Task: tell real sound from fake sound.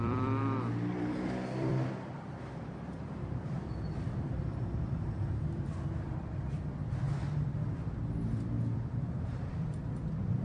fake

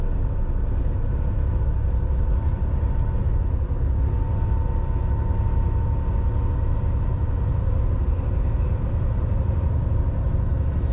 real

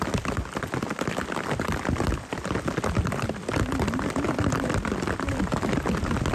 real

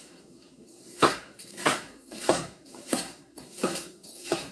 fake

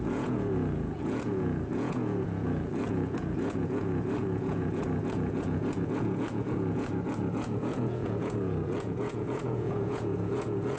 fake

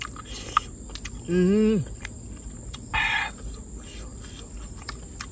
real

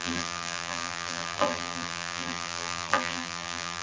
fake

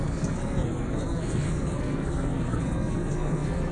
fake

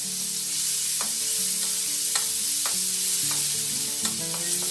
real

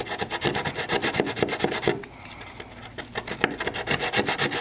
real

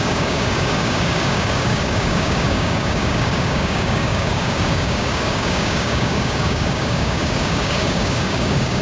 fake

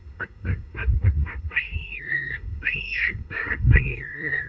fake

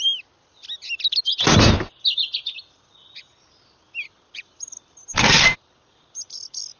real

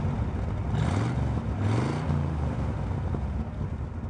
real